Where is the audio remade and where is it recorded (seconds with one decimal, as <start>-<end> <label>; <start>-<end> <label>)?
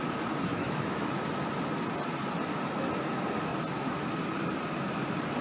0.0-0.5 recorded; 0.5-1.2 remade; 1.2-5.4 recorded